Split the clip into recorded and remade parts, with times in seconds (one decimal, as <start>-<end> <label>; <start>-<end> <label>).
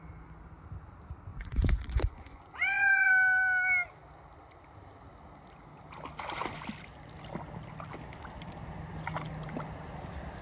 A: 0.0-1.3 recorded; 1.3-3.1 remade; 3.1-10.4 recorded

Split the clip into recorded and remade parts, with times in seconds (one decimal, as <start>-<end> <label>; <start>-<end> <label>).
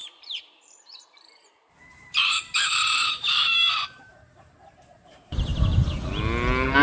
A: 0.0-5.5 remade; 5.5-6.8 recorded